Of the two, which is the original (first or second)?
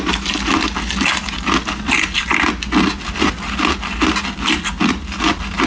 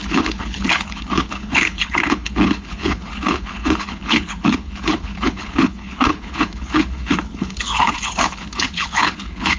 first